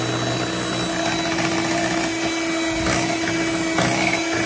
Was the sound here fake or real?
real